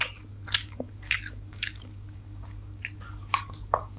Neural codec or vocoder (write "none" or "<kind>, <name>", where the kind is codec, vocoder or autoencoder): codec, DAC